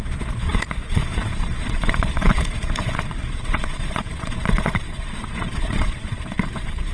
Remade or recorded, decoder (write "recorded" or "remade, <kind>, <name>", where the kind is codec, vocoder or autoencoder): remade, vocoder, Vocos